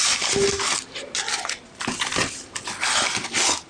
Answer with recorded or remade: recorded